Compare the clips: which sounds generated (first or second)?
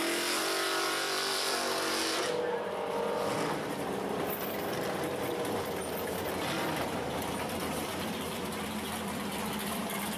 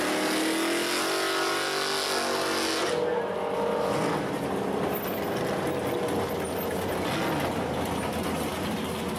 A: first